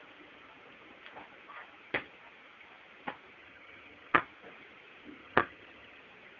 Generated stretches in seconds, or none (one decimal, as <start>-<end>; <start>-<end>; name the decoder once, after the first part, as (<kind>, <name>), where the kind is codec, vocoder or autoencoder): 3.4-4.2 (vocoder, HiFi-GAN); 5.2-6.0

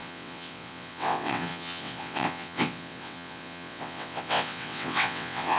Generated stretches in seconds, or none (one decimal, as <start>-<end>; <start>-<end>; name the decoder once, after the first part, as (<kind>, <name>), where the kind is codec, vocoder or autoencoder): 0.0-5.6 (vocoder, WaveNeXt)